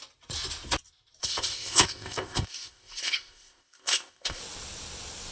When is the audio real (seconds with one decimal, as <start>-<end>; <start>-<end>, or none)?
0.0-1.2; 4.4-5.3

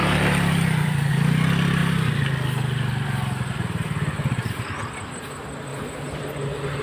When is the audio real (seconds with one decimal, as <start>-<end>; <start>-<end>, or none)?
1.1-5.7; 6.2-6.8

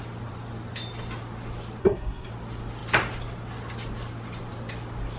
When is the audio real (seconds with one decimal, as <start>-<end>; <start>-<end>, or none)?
0.0-1.8; 2.3-5.2

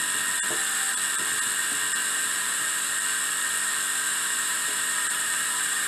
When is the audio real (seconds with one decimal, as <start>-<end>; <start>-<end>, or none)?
0.0-2.0; 3.0-4.1

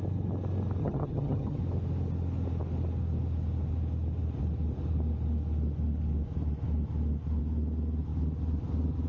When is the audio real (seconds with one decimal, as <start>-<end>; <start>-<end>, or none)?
0.0-0.8; 1.6-9.1

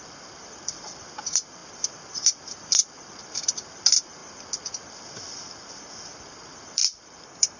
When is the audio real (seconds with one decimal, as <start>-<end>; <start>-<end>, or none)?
none

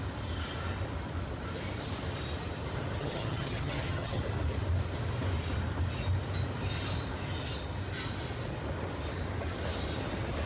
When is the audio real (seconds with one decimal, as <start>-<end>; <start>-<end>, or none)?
0.0-3.0; 4.2-10.5

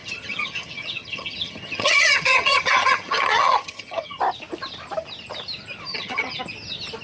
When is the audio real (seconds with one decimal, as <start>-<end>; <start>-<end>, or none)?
4.2-5.9; 6.4-7.0